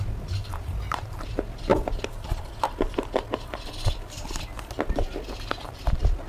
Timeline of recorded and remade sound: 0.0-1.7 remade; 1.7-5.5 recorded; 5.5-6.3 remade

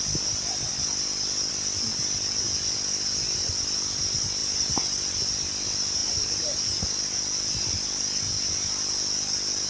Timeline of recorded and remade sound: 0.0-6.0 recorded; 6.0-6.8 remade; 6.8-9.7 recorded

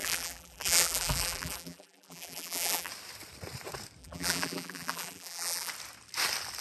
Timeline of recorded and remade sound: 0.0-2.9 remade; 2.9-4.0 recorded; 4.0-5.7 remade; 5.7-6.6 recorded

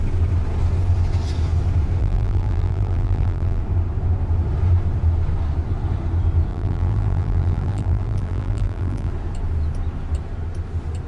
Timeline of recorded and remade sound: 0.0-2.0 recorded; 2.0-3.6 remade; 3.6-6.5 recorded; 6.5-9.1 remade; 9.1-11.1 recorded